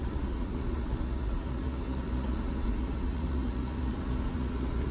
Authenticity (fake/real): fake